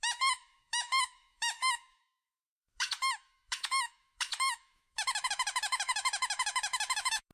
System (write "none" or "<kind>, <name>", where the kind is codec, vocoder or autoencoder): autoencoder, DAC-VAE